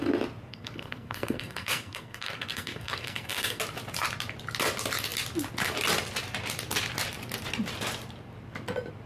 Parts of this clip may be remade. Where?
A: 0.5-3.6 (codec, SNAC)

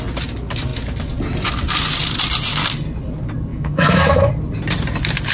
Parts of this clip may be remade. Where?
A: 3.5-4.3 (autoencoder, DAC-VAE)

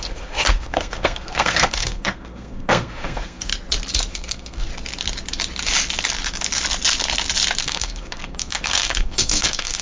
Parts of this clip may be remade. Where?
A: 0.0-3.5 (codec, SNAC); 4.1-4.7; 7.6-9.8

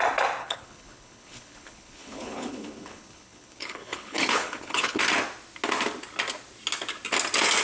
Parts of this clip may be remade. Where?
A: 0.4-5.0 (codec, HILCodec)

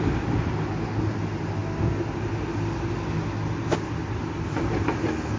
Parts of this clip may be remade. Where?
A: none

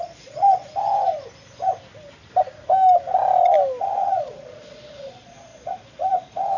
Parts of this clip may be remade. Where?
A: 0.0-0.6 (vocoder, Vocos); 3.8-6.6

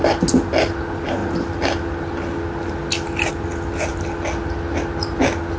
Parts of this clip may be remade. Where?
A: none

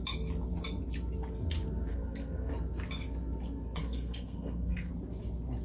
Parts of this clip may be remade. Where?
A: 1.9-2.5 (codec, SNAC); 3.8-4.9